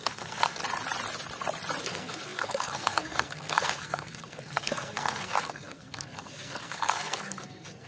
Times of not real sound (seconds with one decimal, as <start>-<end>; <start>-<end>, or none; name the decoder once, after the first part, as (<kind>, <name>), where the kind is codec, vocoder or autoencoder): 0.0-0.6 (codec, SNAC); 1.8-7.9